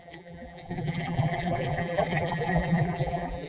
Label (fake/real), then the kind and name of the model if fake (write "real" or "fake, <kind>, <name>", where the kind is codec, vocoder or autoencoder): fake, vocoder, BigVGAN v2